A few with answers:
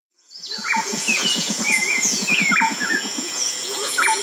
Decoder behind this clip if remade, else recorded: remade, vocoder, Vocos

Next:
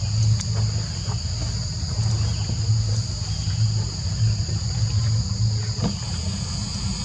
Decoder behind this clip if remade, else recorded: recorded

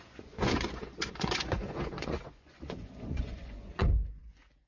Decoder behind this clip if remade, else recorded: remade, vocoder, Vocos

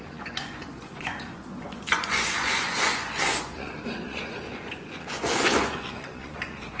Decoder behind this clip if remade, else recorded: remade, vocoder, Vocos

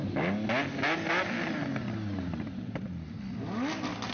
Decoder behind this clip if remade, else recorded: recorded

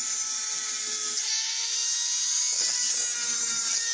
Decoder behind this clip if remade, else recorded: recorded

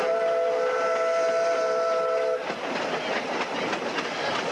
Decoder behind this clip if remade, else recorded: recorded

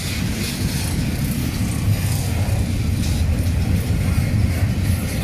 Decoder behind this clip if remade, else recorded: recorded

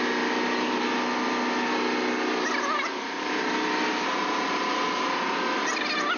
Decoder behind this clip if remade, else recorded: recorded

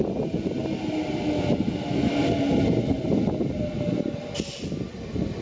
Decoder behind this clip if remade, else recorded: recorded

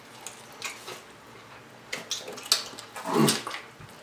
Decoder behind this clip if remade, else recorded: recorded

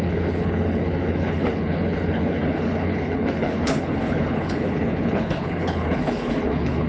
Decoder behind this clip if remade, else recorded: remade, codec, HILCodec